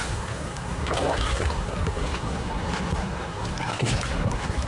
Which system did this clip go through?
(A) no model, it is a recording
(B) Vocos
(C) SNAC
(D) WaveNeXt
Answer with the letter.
C